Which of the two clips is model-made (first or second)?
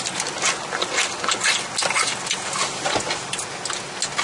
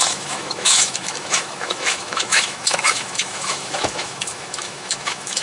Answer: second